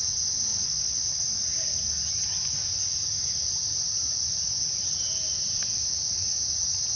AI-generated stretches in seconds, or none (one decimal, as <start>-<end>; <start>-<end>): 0.5-1.2